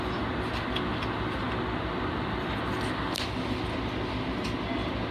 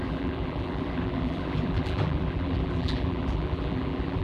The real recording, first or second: first